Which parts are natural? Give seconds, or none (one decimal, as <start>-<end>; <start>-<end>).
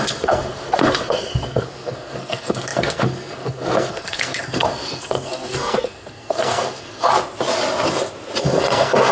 7.1-8.4